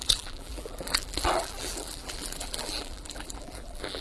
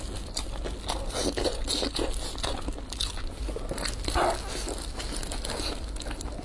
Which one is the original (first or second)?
second